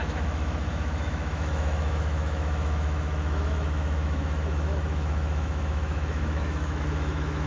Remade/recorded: remade